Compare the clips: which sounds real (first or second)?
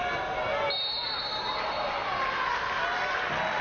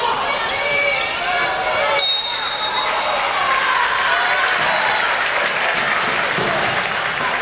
first